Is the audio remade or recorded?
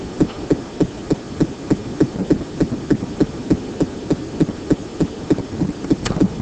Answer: recorded